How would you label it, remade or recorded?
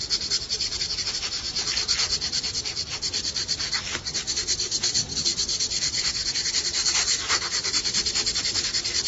recorded